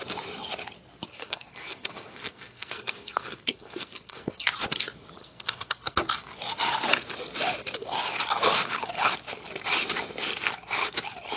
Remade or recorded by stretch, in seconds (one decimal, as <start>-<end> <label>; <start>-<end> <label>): 0.0-1.1 recorded; 1.1-4.5 remade; 4.5-5.2 recorded; 5.2-6.0 remade; 6.0-11.4 recorded

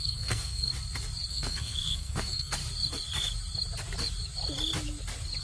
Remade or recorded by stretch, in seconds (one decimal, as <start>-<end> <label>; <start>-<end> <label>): 0.0-0.7 remade; 0.7-1.3 recorded; 1.3-2.6 remade; 2.6-5.4 recorded

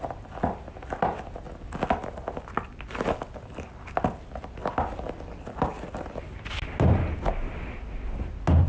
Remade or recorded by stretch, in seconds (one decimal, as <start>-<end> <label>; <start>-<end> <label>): 0.0-4.6 recorded; 4.6-6.2 remade; 6.2-8.7 recorded

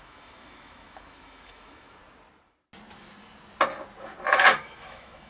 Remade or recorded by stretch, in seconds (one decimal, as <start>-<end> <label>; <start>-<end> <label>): 0.0-2.0 remade; 2.0-4.3 recorded; 4.3-5.3 remade

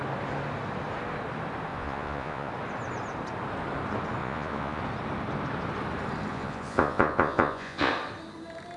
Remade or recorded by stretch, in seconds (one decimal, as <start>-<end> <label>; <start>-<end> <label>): 0.0-1.7 recorded; 1.7-2.5 remade; 2.5-4.2 recorded; 4.2-4.8 remade; 4.8-6.3 recorded; 6.3-7.9 remade; 7.9-8.8 recorded

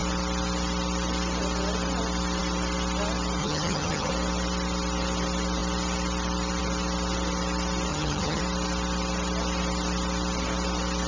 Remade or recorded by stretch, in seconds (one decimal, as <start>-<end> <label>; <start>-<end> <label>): 0.0-3.4 recorded; 3.4-4.1 remade; 4.1-7.9 recorded; 7.9-8.4 remade; 8.4-11.1 recorded

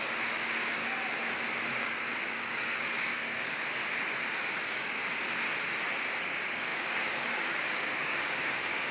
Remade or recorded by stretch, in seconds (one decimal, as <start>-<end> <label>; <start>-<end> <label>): 0.0-0.8 remade; 0.8-1.5 recorded; 1.5-3.8 remade; 3.8-4.3 recorded; 4.3-5.0 remade; 5.0-6.2 recorded; 6.2-8.9 remade

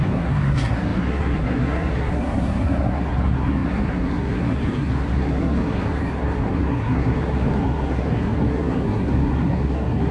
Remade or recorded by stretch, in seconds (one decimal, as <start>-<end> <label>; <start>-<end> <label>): 0.0-10.1 remade